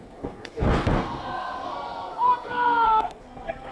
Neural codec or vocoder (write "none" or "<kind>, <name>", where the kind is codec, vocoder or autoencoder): codec, SNAC